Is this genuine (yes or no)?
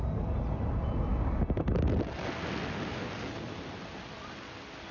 yes